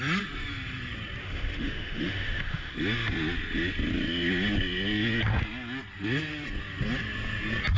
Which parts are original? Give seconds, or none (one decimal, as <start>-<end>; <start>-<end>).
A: 0.0-1.2; 2.7-7.8